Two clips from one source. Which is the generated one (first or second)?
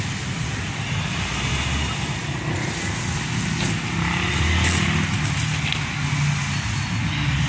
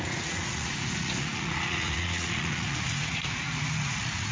second